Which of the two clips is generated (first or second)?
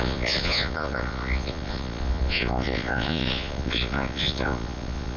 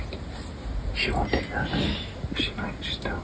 first